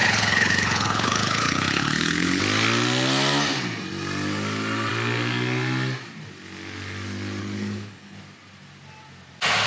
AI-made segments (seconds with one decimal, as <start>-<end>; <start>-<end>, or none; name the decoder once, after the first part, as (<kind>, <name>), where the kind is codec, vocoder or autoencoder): 0.0-2.4 (codec, HILCodec); 7.4-8.2